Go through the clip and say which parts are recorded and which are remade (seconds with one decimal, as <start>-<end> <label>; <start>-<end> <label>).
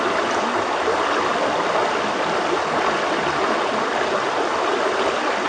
0.0-5.5 recorded